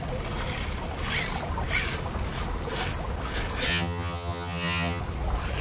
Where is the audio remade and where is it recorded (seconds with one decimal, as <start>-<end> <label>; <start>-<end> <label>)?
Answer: 0.0-3.7 recorded; 3.7-5.0 remade; 5.0-5.6 recorded